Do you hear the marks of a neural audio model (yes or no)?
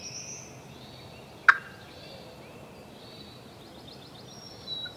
no